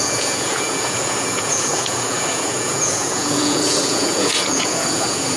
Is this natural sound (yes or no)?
no